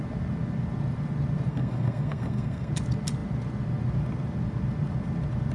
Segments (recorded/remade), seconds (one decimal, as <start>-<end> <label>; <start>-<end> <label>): 0.0-1.5 recorded; 1.5-2.7 remade; 2.7-5.5 recorded

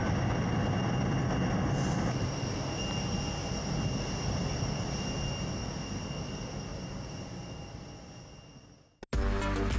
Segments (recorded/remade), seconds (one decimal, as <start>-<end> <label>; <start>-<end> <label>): 0.0-6.7 recorded; 6.7-7.8 remade; 7.8-9.8 recorded

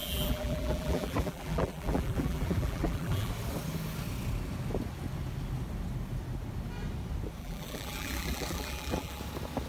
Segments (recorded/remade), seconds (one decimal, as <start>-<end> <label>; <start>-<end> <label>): 0.0-3.3 remade; 3.3-7.4 recorded; 7.4-9.2 remade; 9.2-9.7 recorded

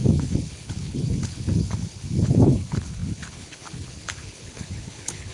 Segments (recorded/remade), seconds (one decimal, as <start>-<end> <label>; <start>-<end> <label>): 0.0-5.3 remade

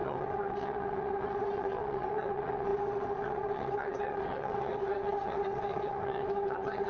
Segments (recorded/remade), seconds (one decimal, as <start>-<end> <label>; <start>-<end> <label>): 0.0-6.9 remade

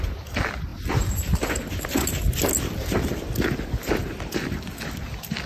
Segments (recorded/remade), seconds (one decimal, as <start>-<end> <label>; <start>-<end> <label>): 0.0-5.5 recorded

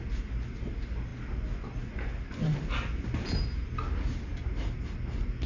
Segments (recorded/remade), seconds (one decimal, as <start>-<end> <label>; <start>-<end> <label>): 0.0-5.5 recorded

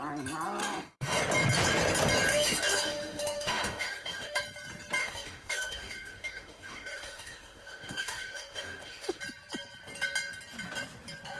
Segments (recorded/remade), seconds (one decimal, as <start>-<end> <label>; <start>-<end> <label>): 0.0-0.6 recorded; 0.6-1.2 remade; 1.2-2.3 recorded; 2.3-4.4 remade; 4.4-5.0 recorded; 5.0-9.2 remade; 9.2-11.4 recorded